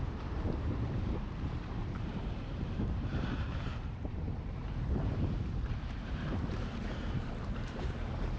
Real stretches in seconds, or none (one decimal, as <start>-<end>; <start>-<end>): none